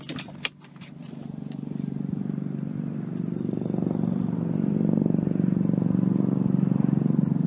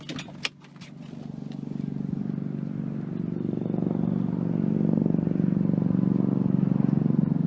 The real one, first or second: second